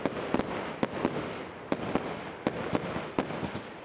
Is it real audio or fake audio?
real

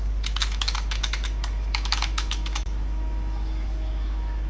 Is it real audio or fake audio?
fake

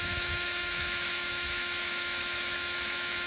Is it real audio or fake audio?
fake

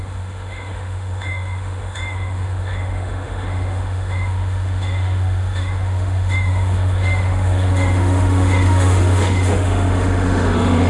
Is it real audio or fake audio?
fake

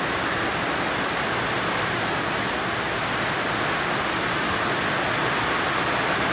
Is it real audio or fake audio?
real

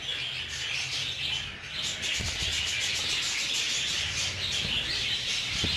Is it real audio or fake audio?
real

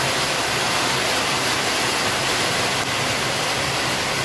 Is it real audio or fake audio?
real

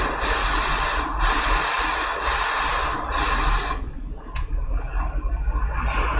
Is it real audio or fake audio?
real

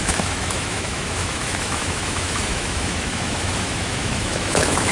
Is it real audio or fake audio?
fake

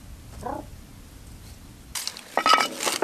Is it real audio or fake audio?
real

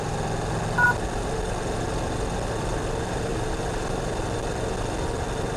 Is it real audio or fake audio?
real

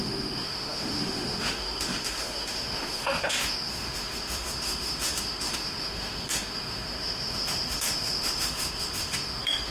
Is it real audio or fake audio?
fake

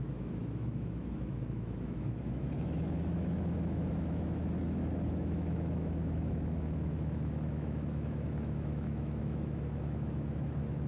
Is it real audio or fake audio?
fake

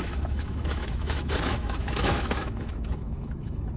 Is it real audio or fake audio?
fake